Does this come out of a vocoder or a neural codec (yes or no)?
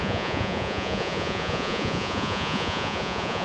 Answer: yes